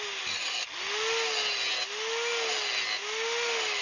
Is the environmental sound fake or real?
real